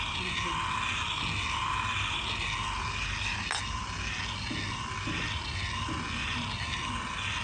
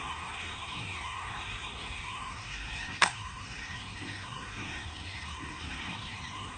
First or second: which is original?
first